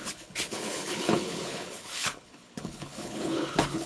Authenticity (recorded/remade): remade